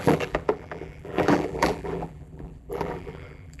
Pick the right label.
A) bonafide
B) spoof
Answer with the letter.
B